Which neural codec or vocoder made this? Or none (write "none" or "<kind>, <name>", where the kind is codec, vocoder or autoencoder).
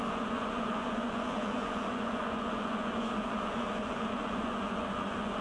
vocoder, Vocos